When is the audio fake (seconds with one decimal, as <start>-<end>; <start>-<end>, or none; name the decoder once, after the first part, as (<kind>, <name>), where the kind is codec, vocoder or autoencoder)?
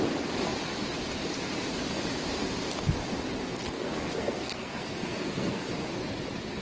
3.8-5.7 (codec, SNAC)